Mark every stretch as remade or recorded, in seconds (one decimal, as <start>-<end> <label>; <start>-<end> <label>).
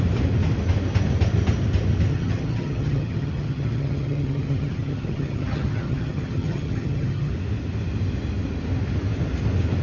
0.0-2.1 recorded; 2.1-7.3 remade; 7.3-9.8 recorded